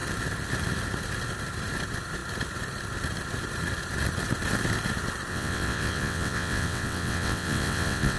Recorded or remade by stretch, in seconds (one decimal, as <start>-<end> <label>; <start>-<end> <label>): 0.0-5.3 recorded; 5.3-8.2 remade